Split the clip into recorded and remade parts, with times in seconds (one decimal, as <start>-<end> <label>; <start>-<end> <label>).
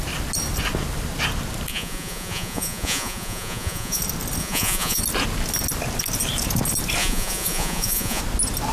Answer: 0.0-1.7 recorded; 1.7-4.0 remade; 4.0-4.4 recorded; 4.4-5.0 remade; 5.0-7.0 recorded; 7.0-8.2 remade; 8.2-8.7 recorded